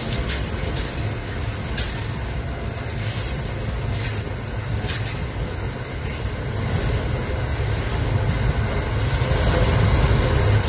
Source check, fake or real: real